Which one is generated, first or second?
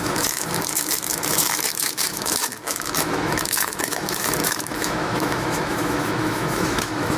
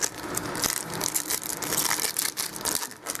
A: first